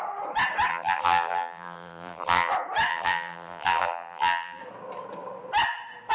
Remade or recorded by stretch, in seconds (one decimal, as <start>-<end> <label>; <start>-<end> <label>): 0.0-0.7 recorded; 0.7-2.5 remade; 2.5-2.9 recorded; 2.9-4.6 remade; 4.6-6.1 recorded

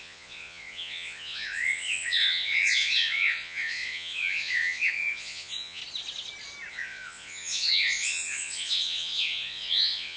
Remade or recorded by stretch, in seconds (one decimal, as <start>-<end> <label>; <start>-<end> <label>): 0.0-5.8 remade; 5.8-6.7 recorded; 6.7-10.2 remade

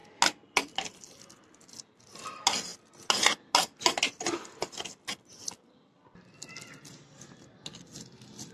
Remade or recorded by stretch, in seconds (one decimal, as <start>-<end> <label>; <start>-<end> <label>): 0.0-8.5 recorded

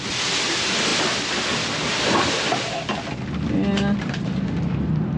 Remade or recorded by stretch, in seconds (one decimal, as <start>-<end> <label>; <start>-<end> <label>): 0.0-5.2 recorded

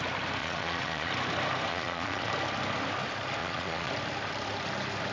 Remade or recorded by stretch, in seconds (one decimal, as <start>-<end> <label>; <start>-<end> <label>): 0.0-0.4 recorded; 0.4-1.1 remade; 1.1-1.7 recorded; 1.7-2.3 remade; 2.3-3.4 recorded; 3.4-3.9 remade; 3.9-5.1 recorded

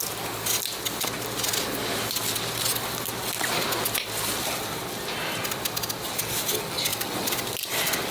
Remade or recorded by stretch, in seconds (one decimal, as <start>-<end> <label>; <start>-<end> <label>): 0.0-6.9 recorded; 6.9-8.1 remade

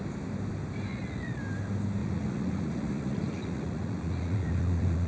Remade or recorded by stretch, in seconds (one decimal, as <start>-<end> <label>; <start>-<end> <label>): 0.0-0.9 recorded; 0.9-1.4 remade; 1.4-2.0 recorded; 2.0-5.1 remade